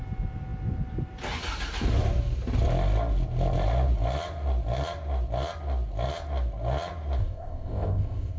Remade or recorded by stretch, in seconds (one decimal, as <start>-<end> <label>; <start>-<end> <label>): 0.0-7.2 recorded; 7.2-8.4 remade